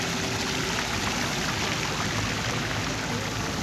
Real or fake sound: real